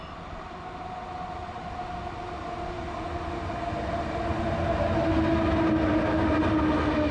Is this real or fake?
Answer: real